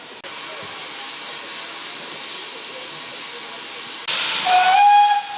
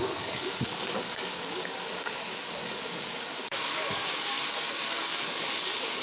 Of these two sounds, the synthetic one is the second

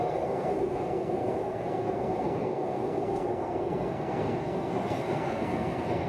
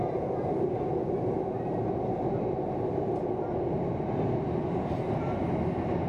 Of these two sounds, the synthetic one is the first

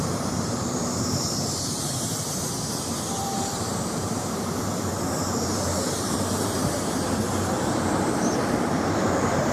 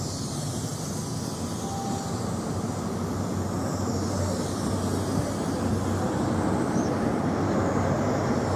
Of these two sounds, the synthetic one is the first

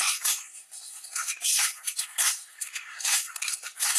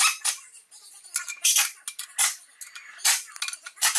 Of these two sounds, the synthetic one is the first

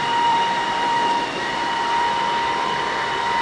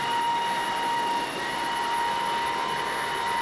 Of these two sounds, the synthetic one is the first